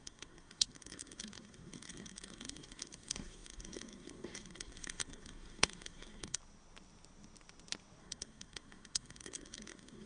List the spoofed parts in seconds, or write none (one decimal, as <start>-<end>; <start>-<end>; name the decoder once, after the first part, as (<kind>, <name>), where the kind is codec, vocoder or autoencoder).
0.0-6.4 (codec, SNAC); 8.0-10.1